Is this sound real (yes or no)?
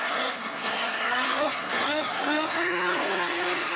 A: no